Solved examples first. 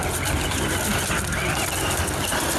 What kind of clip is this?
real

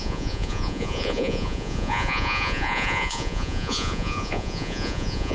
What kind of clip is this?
fake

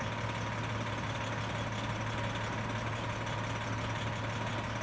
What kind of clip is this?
real